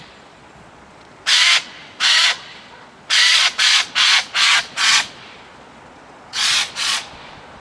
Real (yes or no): no